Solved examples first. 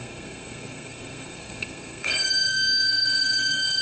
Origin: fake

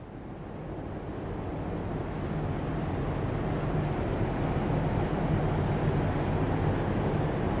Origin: real